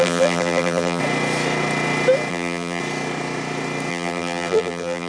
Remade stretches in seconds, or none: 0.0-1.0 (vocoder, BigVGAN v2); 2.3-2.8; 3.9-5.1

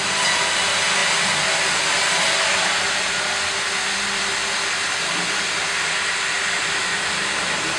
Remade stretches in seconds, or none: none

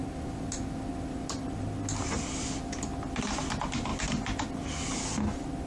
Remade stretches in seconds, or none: none

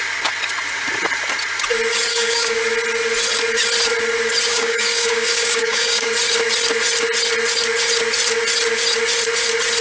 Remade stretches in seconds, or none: 2.1-2.6 (codec, DAC); 4.5-6.1

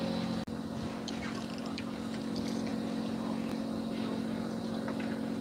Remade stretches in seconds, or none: 1.6-2.2 (vocoder, BigVGAN v2); 2.7-4.6

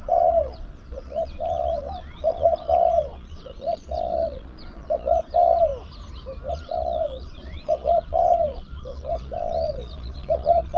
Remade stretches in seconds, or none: 0.0-5.7 (vocoder, Vocos); 6.5-10.8

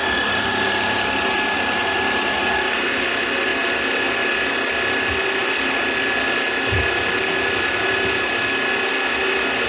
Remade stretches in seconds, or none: 0.0-2.4 (vocoder, BigVGAN v2); 5.4-7.9